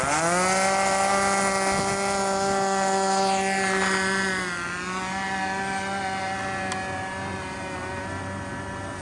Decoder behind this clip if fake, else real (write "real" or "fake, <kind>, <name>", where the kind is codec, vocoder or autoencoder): real